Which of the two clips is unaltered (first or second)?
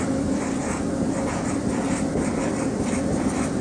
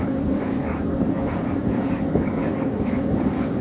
first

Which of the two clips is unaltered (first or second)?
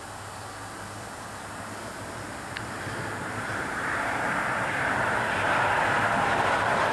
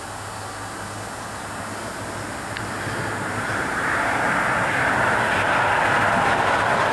second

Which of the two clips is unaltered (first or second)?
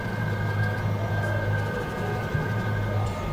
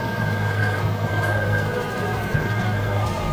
first